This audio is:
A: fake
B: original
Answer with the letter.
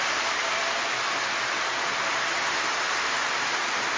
B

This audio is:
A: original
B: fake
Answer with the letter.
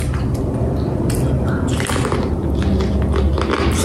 A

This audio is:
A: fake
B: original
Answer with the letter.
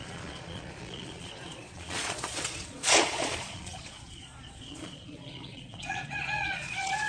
A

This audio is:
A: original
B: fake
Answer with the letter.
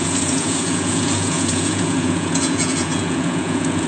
B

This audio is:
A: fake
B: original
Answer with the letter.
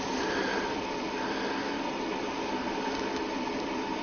B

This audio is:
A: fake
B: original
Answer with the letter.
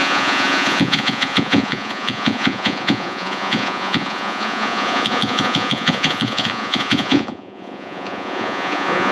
A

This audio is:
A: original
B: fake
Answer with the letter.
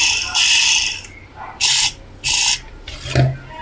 A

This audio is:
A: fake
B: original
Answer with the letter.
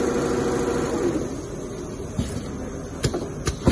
B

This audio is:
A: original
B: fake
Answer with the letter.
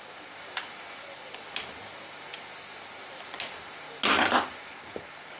A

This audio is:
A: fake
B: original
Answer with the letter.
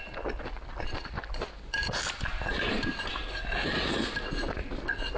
B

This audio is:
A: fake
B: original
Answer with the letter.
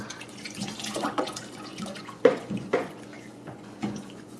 A